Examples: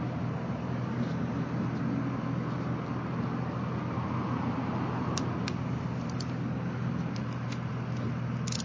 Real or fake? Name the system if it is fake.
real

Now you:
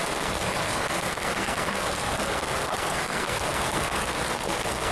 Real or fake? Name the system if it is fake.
fake, codec, SNAC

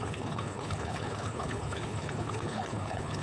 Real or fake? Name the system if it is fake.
fake, codec, HILCodec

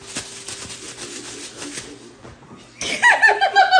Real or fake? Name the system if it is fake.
real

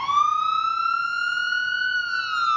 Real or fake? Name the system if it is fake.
real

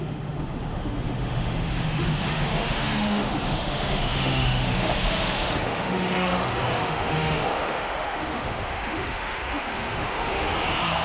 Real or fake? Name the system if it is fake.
fake, autoencoder, DAC-VAE